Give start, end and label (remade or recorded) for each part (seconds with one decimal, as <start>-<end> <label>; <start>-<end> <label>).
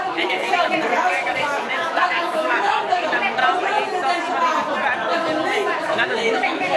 0.0-3.4 remade; 3.4-5.8 recorded; 5.8-6.8 remade